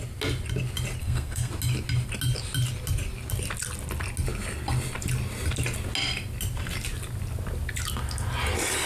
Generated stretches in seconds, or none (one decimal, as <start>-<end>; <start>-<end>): 1.0-1.5